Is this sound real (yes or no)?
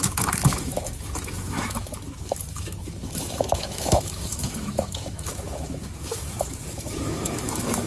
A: no